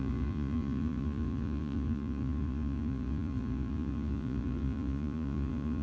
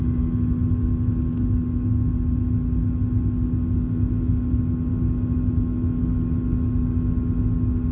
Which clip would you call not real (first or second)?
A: first